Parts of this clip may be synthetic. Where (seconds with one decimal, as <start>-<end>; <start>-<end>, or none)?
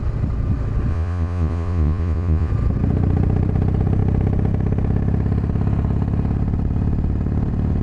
0.9-2.5